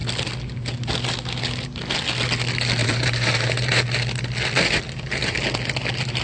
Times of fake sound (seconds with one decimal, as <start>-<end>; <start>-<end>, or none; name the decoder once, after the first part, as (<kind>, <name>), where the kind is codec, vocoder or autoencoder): 2.8-3.8 (vocoder, BigVGAN v2)